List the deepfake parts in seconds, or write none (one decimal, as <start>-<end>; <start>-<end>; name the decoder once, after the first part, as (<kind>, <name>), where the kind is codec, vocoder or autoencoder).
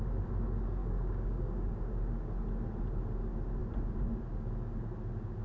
0.8-2.0 (codec, DAC)